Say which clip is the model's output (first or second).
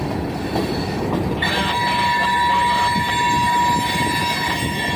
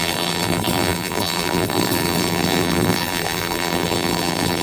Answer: second